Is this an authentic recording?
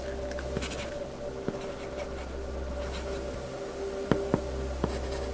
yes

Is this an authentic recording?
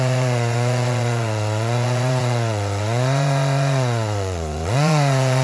no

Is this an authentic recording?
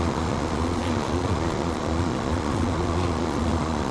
no